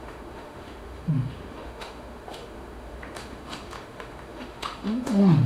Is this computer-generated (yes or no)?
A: yes